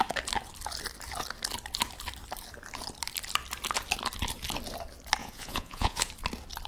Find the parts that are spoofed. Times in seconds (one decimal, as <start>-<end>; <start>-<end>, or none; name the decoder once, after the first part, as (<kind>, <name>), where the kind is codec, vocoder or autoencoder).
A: 5.2-6.1 (vocoder, Vocos)